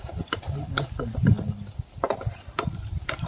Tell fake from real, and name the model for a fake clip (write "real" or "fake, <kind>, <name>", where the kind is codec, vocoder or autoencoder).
real